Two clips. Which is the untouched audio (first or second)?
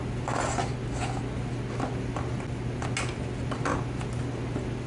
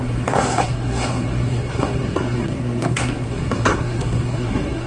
first